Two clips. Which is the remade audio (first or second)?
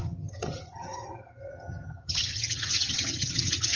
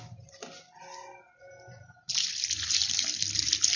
first